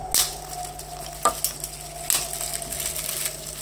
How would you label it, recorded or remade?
recorded